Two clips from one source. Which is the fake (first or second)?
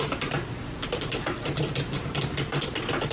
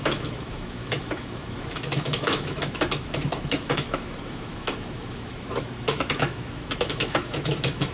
second